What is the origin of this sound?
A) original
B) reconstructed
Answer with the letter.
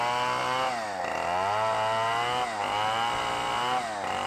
A